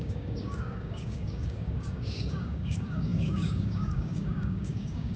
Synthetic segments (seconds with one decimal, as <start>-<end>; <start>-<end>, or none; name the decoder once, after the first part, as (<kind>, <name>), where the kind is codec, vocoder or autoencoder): 0.0-5.2 (codec, DAC)